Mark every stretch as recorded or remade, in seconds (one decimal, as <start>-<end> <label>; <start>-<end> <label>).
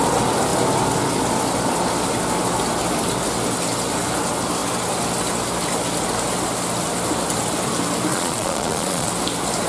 0.0-8.1 recorded; 8.1-9.1 remade; 9.1-9.7 recorded